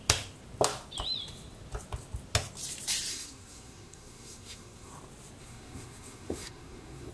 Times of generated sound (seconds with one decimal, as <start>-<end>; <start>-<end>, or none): 3.1-4.9; 5.4-7.1